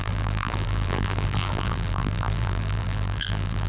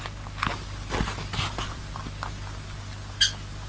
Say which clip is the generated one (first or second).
first